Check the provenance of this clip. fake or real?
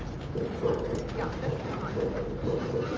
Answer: real